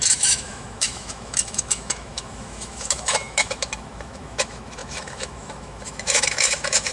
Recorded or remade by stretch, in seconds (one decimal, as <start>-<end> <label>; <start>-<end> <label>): 0.0-6.9 remade